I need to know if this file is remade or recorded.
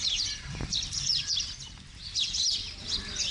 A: remade